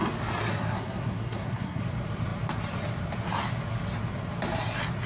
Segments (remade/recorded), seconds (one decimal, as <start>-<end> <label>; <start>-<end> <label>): 0.0-0.5 recorded; 0.5-1.8 remade; 1.8-5.1 recorded

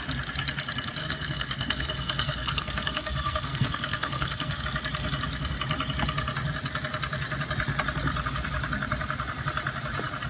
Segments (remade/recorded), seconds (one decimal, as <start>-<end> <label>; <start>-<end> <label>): 0.0-1.0 recorded; 1.0-4.6 remade; 4.6-10.3 recorded

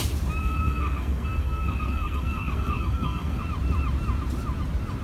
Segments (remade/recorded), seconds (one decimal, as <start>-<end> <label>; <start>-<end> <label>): 0.0-0.4 recorded; 0.4-3.4 remade; 3.4-5.0 recorded

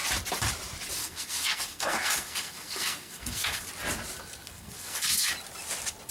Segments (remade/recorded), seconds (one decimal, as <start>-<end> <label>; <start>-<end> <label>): 0.0-1.0 recorded; 1.0-3.7 remade; 3.7-4.4 recorded; 4.4-5.3 remade; 5.3-6.1 recorded